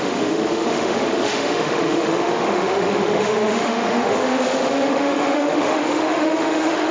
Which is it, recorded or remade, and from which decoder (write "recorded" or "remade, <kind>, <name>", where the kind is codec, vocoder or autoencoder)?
remade, autoencoder, DAC-VAE